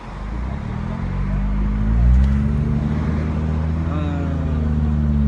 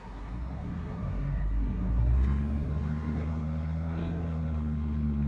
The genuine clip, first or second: first